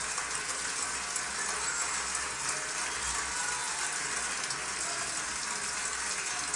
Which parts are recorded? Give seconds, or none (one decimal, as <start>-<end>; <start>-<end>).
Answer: 0.0-6.6